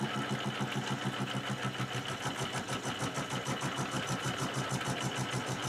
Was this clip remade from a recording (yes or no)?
no